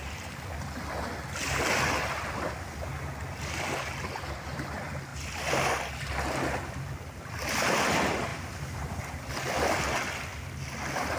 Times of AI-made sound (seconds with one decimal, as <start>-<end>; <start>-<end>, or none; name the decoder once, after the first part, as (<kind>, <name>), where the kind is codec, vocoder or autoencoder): none